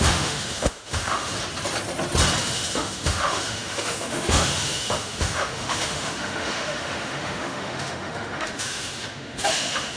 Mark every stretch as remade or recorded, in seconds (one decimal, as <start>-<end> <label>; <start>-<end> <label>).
0.0-1.3 remade; 1.3-2.4 recorded; 2.4-10.0 remade